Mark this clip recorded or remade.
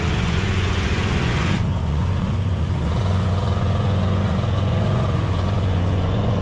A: remade